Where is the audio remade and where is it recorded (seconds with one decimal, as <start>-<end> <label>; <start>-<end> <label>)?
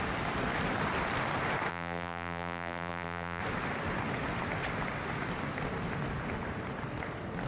0.0-1.7 recorded; 1.7-3.4 remade; 3.4-7.5 recorded